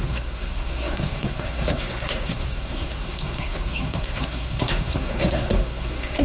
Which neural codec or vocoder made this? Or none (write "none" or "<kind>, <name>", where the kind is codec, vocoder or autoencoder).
codec, SNAC